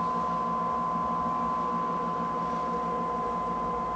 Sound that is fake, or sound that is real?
real